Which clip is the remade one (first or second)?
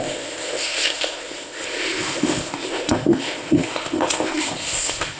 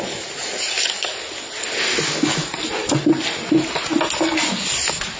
first